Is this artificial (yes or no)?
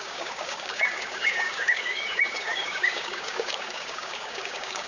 yes